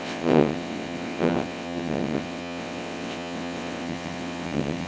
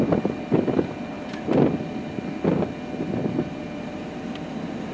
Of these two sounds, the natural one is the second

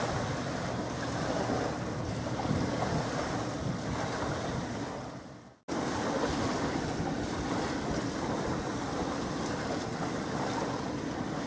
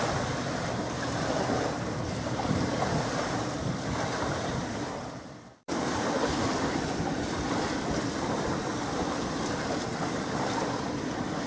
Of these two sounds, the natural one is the first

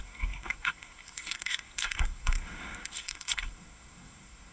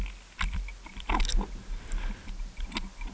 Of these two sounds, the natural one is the second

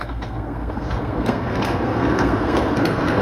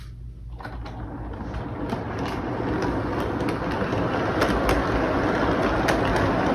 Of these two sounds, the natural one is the second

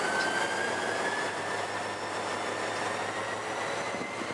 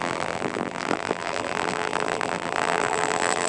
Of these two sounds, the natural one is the first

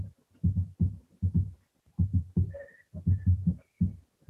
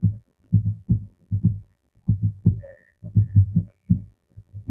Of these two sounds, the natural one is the first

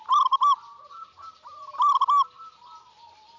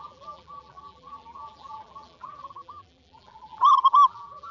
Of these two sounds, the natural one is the first